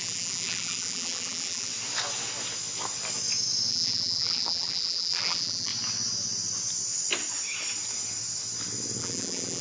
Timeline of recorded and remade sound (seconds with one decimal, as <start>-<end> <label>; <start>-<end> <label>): 0.0-1.7 remade; 1.7-3.7 recorded; 3.7-5.7 remade; 5.7-9.0 recorded; 9.0-9.6 remade